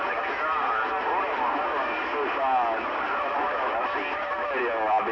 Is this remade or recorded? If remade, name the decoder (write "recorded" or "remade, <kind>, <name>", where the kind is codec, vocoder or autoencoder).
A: remade, vocoder, BigVGAN v2